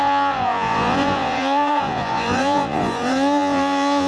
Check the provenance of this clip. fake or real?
fake